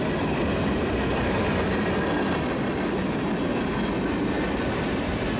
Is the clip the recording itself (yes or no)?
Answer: yes